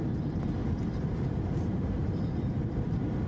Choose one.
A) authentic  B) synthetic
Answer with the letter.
B